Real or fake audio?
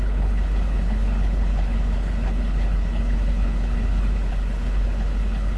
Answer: fake